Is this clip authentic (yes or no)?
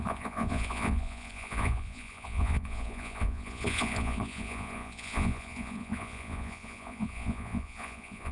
no